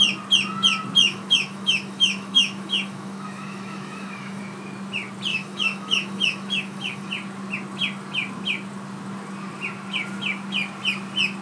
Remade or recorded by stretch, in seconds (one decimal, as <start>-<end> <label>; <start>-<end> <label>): 0.0-1.0 recorded; 1.0-4.4 remade; 4.4-5.3 recorded; 5.3-7.1 remade; 7.1-11.4 recorded